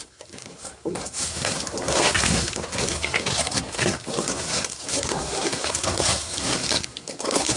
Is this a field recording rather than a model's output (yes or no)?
no